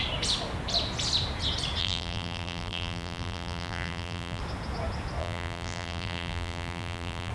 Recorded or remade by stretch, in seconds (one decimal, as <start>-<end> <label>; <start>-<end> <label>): 0.0-1.8 recorded; 1.8-4.4 remade; 4.4-5.2 recorded; 5.2-7.3 remade